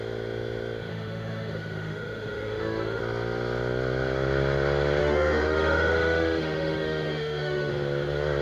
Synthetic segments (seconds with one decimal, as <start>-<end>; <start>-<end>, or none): 0.9-3.0; 5.0-7.7